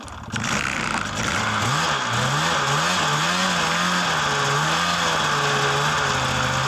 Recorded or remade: recorded